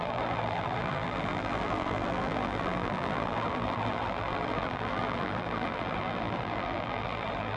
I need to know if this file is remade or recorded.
remade